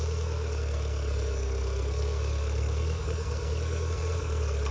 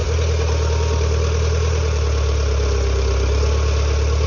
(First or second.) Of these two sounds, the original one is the second